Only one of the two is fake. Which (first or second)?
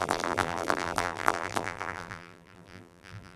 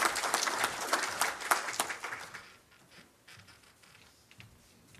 first